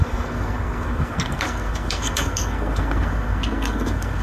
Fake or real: fake